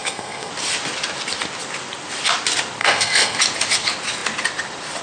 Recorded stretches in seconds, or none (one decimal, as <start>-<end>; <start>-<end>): 0.5-2.8; 3.4-5.0